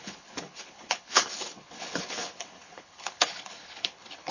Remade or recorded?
remade